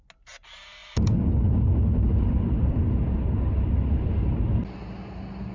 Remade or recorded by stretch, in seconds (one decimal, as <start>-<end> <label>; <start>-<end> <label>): 0.0-5.5 recorded